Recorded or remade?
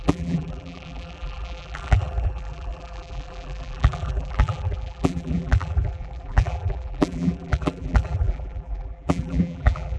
remade